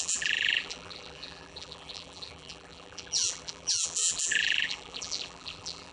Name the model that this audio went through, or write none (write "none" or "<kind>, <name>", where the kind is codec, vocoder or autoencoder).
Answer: vocoder, BigVGAN v2